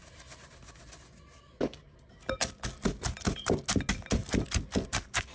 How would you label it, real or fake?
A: real